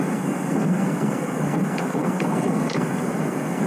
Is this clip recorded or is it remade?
remade